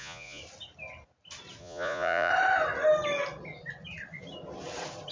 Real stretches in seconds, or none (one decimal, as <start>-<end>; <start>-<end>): 0.4-1.6; 2.3-5.1